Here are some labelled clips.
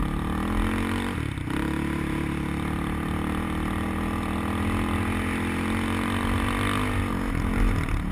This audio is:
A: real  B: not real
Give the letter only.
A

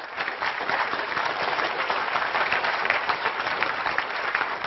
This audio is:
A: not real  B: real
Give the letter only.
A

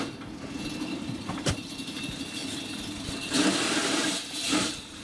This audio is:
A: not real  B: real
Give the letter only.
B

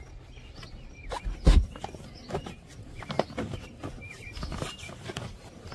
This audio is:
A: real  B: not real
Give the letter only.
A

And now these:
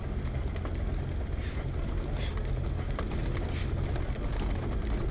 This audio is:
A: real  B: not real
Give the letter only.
A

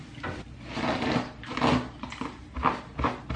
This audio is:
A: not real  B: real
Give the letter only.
B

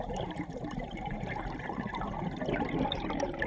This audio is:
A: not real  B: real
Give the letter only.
A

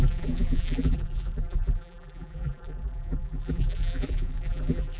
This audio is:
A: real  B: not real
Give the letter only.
B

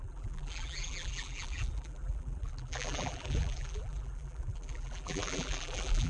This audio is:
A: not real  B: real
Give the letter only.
A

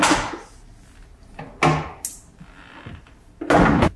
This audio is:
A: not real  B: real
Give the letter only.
B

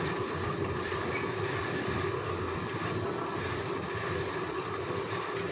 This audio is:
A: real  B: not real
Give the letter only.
A